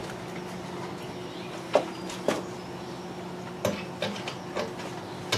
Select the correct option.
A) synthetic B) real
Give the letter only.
B